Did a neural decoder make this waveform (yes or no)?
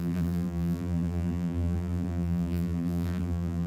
yes